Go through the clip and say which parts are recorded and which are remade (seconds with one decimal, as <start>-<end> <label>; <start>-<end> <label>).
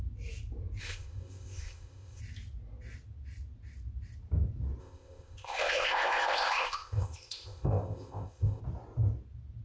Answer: 0.0-0.8 recorded; 0.8-2.2 remade; 2.2-4.8 recorded; 4.8-8.6 remade; 8.6-9.6 recorded